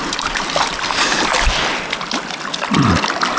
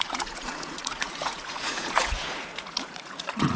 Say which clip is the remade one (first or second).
second